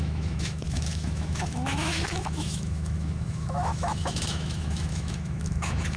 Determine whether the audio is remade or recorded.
remade